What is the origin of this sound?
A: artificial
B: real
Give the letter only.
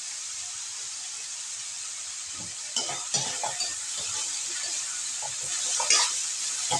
B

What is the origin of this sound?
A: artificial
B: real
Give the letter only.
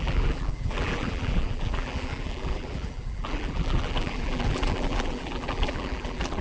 A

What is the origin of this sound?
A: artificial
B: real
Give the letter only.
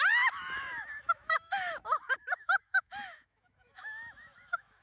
A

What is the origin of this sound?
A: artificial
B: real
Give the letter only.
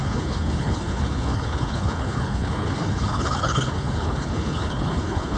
A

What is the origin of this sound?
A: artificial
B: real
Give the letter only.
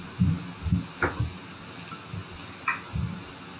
B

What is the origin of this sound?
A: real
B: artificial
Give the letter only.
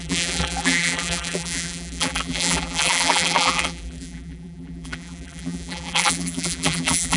B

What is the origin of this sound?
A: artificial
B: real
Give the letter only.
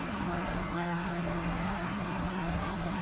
A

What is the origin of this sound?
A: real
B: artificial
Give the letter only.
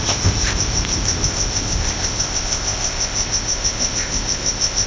B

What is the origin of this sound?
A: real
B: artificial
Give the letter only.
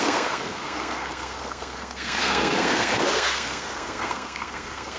B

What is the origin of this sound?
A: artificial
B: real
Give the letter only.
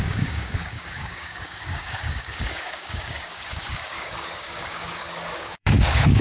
A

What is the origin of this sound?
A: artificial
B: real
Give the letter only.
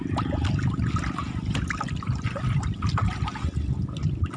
B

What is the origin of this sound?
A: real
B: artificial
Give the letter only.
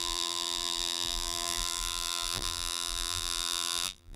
B